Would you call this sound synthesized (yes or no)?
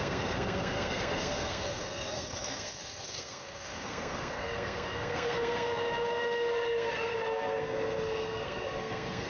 yes